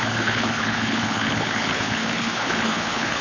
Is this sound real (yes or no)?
no